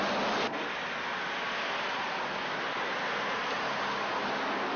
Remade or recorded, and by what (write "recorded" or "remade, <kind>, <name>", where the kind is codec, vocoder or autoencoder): recorded